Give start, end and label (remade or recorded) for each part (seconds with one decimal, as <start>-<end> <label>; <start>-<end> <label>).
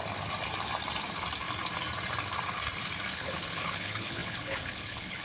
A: 0.0-3.1 recorded; 3.1-5.2 remade